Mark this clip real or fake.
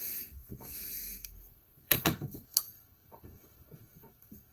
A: fake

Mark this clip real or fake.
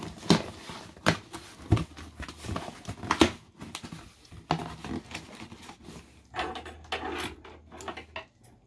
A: real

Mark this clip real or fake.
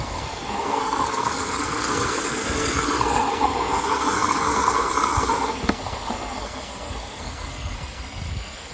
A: fake